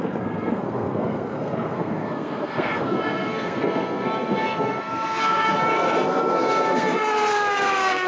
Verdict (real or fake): fake